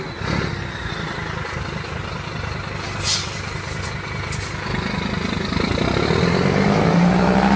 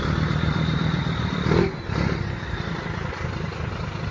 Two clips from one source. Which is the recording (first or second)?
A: first